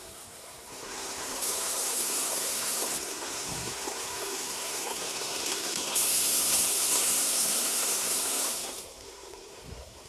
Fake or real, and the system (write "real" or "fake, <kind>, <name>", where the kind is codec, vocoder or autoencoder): fake, codec, SNAC